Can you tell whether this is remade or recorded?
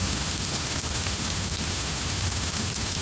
remade